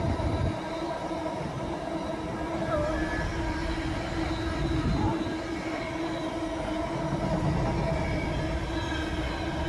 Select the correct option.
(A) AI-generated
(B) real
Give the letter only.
B